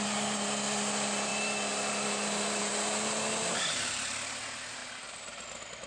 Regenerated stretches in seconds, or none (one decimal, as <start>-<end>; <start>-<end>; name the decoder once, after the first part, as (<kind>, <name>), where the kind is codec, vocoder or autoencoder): 0.0-1.3 (vocoder, BigVGAN v2); 1.9-2.7; 3.5-4.8